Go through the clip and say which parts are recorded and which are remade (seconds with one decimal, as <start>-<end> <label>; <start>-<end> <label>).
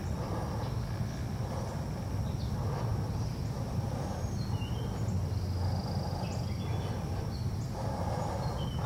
0.0-8.9 recorded